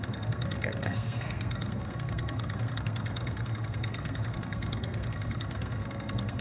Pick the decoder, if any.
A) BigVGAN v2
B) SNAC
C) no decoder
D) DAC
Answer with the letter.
B